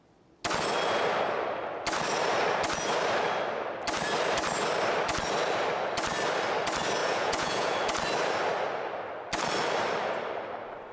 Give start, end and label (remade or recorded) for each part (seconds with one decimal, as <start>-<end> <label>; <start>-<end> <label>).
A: 0.0-7.0 recorded; 7.0-7.7 remade; 7.7-10.9 recorded